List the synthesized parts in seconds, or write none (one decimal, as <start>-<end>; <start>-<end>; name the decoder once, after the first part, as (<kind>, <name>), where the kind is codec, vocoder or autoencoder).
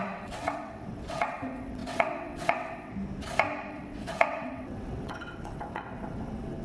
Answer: 0.0-2.9 (vocoder, WaveNeXt); 3.7-6.6